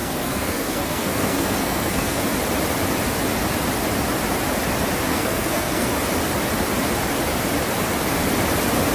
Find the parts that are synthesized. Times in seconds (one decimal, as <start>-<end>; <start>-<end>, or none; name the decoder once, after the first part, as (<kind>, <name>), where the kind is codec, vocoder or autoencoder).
0.0-2.2 (codec, SNAC); 5.1-5.9